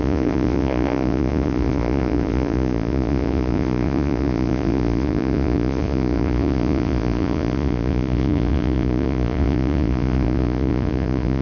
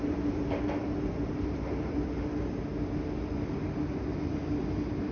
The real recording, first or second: second